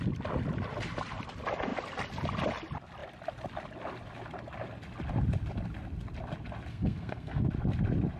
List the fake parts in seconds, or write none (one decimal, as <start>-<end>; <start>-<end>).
6.7-7.5